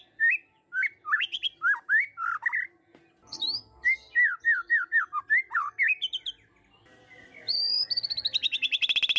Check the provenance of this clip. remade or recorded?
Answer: recorded